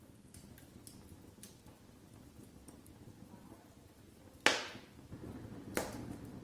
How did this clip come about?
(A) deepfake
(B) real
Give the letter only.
B